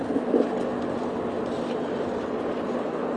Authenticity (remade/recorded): recorded